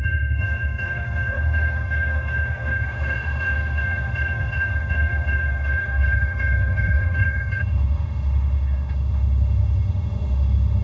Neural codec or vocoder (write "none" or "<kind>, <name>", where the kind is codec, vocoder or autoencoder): autoencoder, DAC-VAE